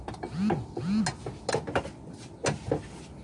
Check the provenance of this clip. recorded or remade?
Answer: recorded